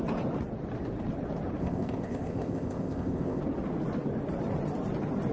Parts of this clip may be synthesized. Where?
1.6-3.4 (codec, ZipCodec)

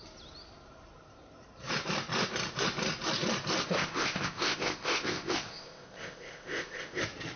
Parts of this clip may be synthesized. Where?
3.6-7.0 (codec, ZipCodec)

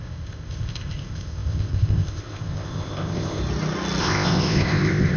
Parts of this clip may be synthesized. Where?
0.0-3.4 (codec, ZipCodec); 4.0-5.2

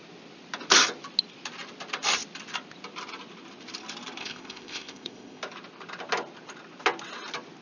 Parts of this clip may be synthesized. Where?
4.2-5.4 (codec, ZipCodec)

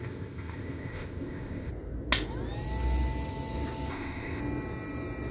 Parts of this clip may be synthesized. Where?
0.0-1.7 (codec, ZipCodec); 3.9-4.4

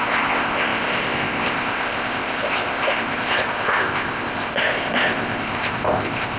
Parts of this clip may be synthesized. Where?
0.0-6.4 (codec, ZipCodec)

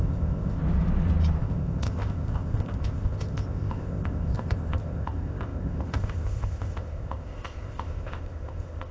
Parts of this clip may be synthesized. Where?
0.0-0.6 (codec, ZipCodec); 1.4-8.9